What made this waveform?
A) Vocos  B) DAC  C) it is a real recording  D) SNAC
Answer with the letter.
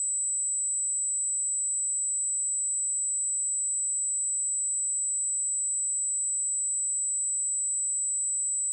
C